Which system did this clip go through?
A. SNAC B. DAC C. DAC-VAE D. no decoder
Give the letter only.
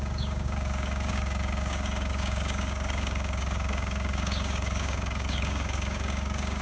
B